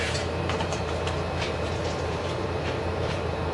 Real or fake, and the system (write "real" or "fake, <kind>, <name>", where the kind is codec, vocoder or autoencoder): fake, vocoder, BigVGAN v2